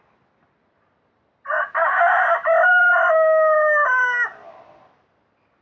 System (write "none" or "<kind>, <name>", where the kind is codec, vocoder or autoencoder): none